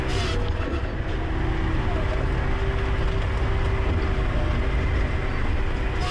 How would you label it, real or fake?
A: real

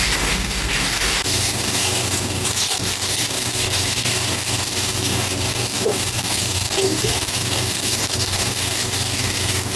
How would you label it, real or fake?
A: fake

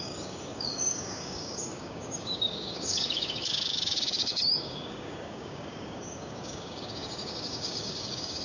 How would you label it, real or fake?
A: fake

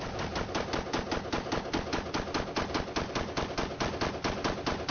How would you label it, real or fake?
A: real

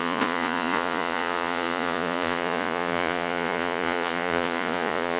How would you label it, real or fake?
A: fake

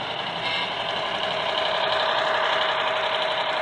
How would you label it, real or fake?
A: real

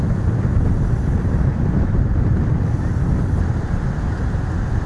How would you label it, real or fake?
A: real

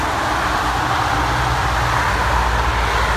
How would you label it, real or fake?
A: real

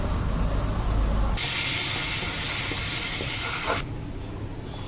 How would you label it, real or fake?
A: real